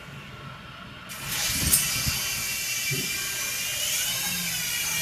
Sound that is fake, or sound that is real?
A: real